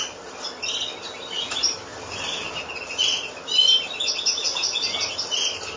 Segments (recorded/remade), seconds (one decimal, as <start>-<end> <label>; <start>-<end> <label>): 0.0-5.8 recorded